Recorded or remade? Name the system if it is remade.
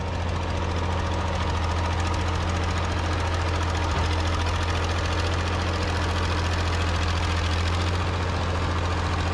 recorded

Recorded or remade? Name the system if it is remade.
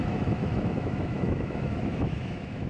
remade, autoencoder, DAC-VAE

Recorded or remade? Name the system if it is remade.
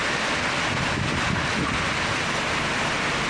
recorded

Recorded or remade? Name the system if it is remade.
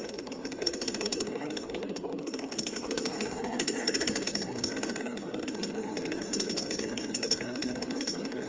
remade, codec, SNAC